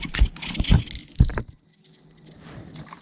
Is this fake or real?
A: real